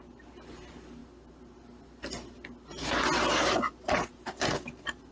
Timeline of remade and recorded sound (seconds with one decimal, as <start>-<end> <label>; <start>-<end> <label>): 0.0-5.1 recorded